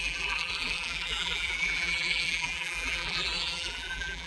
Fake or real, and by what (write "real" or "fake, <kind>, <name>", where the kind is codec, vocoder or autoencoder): fake, vocoder, BigVGAN v2